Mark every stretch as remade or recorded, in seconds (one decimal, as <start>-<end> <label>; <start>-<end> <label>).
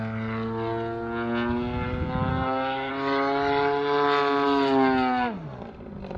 0.0-2.3 recorded; 2.3-2.9 remade; 2.9-6.2 recorded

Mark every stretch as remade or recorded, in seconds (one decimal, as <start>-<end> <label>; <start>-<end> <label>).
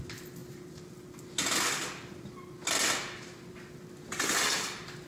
0.0-5.1 recorded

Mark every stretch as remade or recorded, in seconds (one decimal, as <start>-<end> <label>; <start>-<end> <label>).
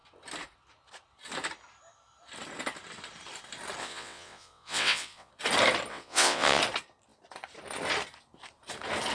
0.0-3.8 recorded; 3.8-5.3 remade; 5.3-5.9 recorded; 5.9-6.6 remade; 6.6-9.1 recorded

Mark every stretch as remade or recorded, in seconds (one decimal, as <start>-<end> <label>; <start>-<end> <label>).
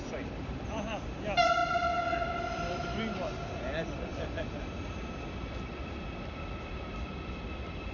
0.0-7.9 recorded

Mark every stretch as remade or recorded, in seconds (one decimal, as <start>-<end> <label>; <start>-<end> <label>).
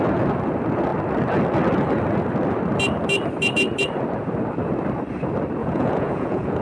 0.0-5.6 recorded; 5.6-6.6 remade